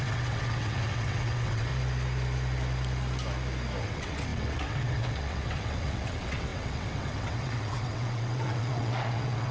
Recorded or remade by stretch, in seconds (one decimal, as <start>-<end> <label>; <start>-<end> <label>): 0.0-1.7 remade; 1.7-3.8 recorded; 3.8-9.5 remade